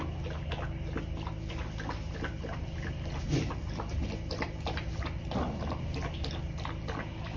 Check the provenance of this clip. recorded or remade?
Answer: recorded